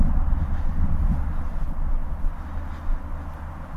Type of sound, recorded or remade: recorded